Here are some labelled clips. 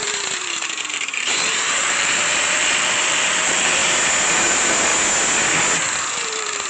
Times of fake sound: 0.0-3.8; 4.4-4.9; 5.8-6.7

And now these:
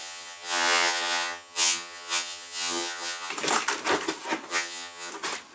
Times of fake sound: 0.0-3.3; 4.5-5.1

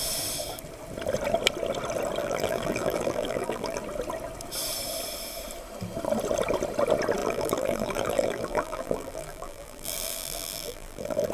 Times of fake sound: 2.2-3.8; 7.2-11.3

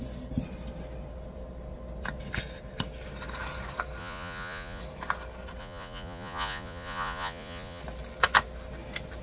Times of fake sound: 4.0-4.8; 5.6-7.8

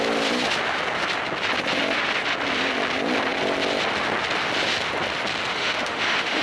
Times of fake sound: 5.5-6.4

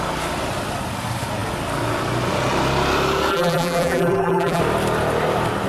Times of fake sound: 3.3-4.6

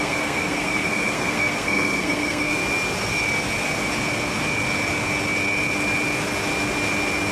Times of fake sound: 0.0-2.6

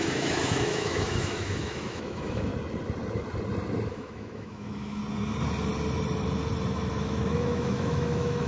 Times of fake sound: 0.0-2.5; 3.9-5.0; 7.0-8.5